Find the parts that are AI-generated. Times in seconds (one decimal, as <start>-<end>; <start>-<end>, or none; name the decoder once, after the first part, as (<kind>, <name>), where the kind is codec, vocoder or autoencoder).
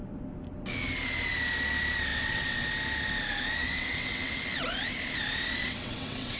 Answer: 2.1-2.7 (vocoder, WaveNeXt); 3.6-4.4; 5.6-6.4